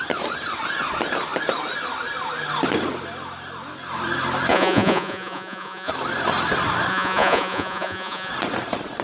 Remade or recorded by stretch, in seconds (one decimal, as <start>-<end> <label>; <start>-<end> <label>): 0.0-4.5 recorded; 4.5-5.9 remade; 5.9-6.9 recorded; 6.9-8.3 remade; 8.3-9.0 recorded